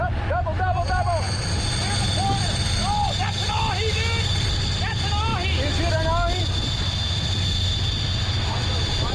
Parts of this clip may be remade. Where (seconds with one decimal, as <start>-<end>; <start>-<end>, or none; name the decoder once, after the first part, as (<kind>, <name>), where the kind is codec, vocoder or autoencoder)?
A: none